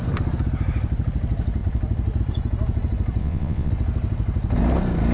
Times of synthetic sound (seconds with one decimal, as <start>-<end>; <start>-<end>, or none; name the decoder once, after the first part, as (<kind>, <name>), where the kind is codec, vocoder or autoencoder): 3.2-3.7 (vocoder, WaveNeXt)